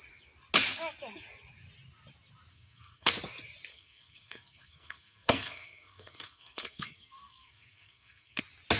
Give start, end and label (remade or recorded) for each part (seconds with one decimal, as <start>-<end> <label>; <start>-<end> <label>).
0.0-2.5 recorded; 2.5-3.1 remade; 3.1-3.7 recorded; 3.7-8.4 remade; 8.4-8.8 recorded